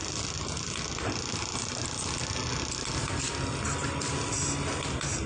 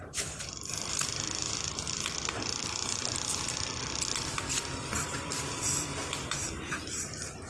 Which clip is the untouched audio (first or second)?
first